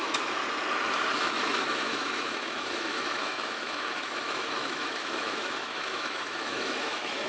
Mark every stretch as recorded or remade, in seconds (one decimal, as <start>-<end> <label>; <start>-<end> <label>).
0.0-0.4 remade; 0.4-1.1 recorded; 1.1-7.3 remade